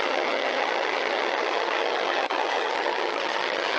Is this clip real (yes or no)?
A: no